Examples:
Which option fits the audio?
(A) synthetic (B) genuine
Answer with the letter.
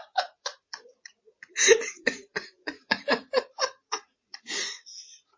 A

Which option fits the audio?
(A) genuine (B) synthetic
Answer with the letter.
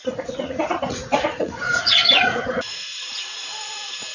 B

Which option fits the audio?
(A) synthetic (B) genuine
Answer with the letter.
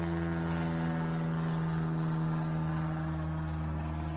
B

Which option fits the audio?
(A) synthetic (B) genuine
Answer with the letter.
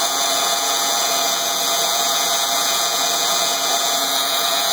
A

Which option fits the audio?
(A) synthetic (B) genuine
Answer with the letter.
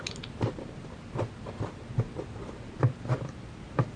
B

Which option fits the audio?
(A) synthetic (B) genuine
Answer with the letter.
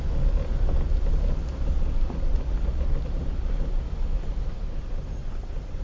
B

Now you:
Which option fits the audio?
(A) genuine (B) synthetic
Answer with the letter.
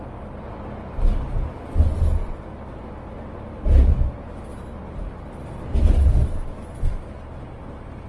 A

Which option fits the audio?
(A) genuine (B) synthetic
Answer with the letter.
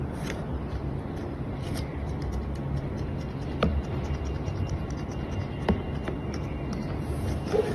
A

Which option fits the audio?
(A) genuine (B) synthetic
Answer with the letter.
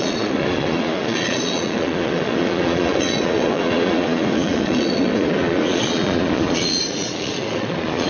B